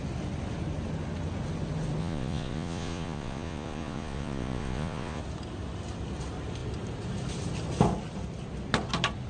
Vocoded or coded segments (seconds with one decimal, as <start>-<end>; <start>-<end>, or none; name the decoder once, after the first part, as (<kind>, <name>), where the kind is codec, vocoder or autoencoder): 2.0-5.2 (vocoder, Vocos)